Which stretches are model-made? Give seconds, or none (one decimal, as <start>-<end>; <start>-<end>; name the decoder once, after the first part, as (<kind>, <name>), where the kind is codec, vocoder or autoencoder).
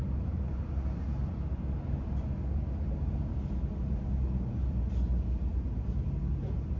none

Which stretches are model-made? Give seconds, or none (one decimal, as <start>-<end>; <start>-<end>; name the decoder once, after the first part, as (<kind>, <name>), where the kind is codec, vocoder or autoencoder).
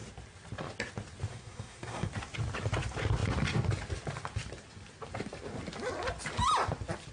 1.3-2.1 (codec, SNAC)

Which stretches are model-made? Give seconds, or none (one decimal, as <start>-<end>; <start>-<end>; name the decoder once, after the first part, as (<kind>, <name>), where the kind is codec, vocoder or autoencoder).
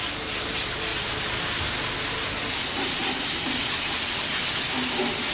none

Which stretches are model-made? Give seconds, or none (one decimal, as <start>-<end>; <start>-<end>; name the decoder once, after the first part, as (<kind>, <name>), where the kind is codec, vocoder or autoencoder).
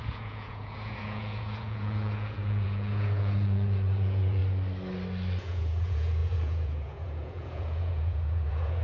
0.0-4.4 (vocoder, Vocos); 5.4-8.8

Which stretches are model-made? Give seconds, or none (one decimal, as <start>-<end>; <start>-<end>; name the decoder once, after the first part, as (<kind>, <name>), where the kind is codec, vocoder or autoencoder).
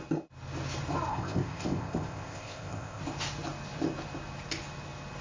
1.1-3.0 (codec, ZipCodec)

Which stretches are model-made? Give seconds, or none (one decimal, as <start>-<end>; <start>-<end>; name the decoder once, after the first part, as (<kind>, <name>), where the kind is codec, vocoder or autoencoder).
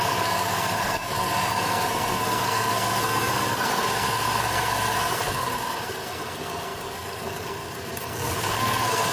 0.0-9.1 (codec, SNAC)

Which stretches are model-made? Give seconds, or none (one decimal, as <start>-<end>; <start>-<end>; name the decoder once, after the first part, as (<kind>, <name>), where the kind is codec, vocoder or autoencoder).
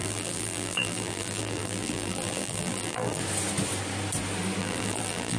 0.0-3.2 (vocoder, BigVGAN v2); 4.6-5.4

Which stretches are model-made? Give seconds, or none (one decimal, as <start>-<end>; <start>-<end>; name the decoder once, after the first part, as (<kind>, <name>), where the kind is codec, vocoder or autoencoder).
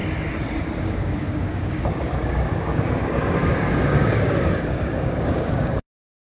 0.8-6.2 (codec, DAC)